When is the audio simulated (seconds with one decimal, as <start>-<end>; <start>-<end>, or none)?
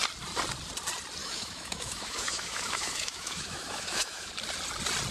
1.2-4.3